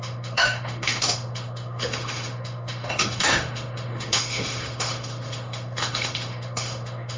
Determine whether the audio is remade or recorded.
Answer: remade